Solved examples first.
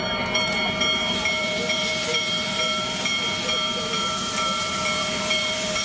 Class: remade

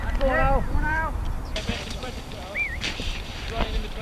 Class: remade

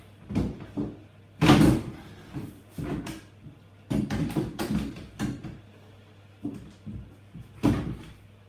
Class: recorded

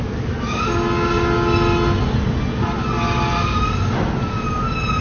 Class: recorded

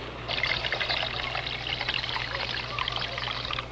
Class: recorded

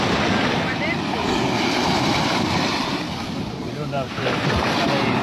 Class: recorded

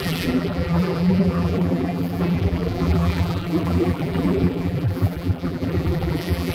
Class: remade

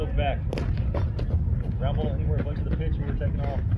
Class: recorded